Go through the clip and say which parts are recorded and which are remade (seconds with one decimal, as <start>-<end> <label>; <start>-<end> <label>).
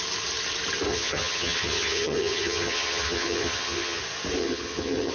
0.0-0.9 recorded; 0.9-4.0 remade; 4.0-4.4 recorded; 4.4-5.1 remade